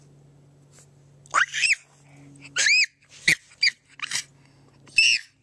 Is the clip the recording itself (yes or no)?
yes